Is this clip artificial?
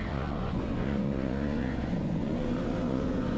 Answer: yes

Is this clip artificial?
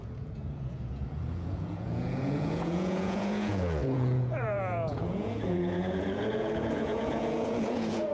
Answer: yes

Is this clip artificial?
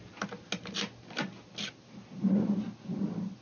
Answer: no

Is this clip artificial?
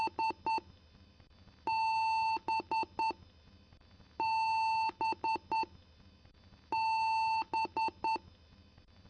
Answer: no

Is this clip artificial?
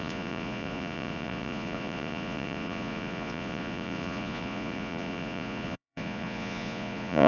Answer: yes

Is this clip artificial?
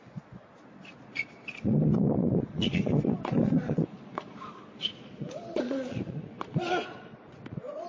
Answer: yes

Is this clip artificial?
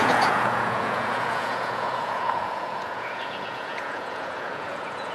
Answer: yes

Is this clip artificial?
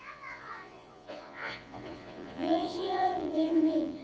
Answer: yes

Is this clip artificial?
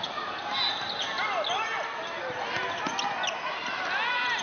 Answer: no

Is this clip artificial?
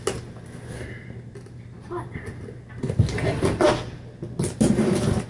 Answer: no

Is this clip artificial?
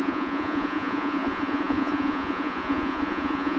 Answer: yes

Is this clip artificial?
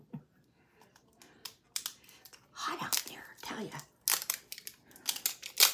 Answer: no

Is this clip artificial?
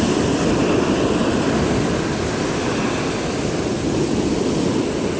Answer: no